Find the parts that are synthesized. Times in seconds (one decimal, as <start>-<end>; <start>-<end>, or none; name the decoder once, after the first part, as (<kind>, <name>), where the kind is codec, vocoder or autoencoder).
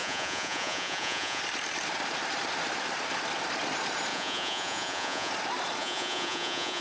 0.0-1.4 (vocoder, Vocos); 4.1-5.3; 5.8-6.8